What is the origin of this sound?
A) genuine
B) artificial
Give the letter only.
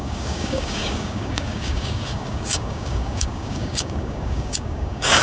B